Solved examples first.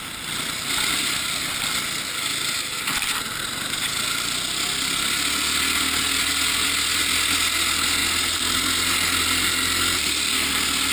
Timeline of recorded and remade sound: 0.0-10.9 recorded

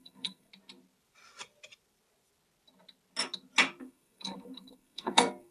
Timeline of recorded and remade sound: 0.0-0.5 remade; 0.5-3.8 recorded; 3.8-5.5 remade

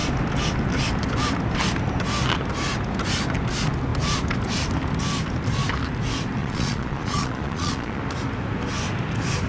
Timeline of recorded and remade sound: 0.0-6.4 recorded; 6.4-8.0 remade; 8.0-9.5 recorded

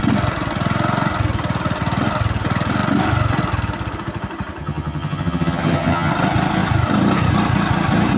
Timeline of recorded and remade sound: 0.0-4.6 recorded; 4.6-6.1 remade; 6.1-8.2 recorded

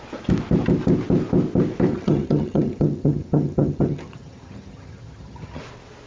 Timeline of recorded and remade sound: 0.0-1.9 recorded; 1.9-5.6 remade; 5.6-6.1 recorded

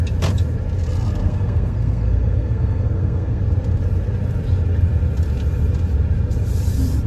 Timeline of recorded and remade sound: 0.0-1.2 recorded; 1.2-3.4 remade; 3.4-7.1 recorded

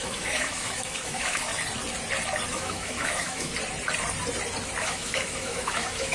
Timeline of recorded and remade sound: 0.0-1.5 remade; 1.5-2.5 recorded; 2.5-3.5 remade; 3.5-4.8 recorded; 4.8-6.1 remade

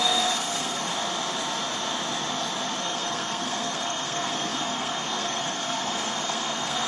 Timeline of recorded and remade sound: 0.0-0.9 remade; 0.9-2.8 recorded; 2.8-6.9 remade